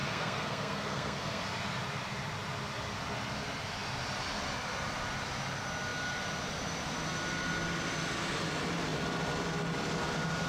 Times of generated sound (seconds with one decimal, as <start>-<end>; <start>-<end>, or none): 0.0-1.4